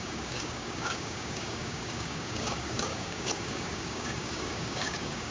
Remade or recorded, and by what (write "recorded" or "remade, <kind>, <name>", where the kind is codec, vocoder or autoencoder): remade, codec, DAC